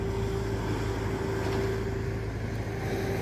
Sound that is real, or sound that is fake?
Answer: real